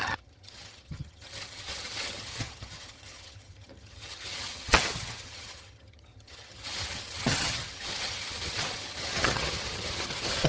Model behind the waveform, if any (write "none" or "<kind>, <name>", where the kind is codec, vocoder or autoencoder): vocoder, HiFi-GAN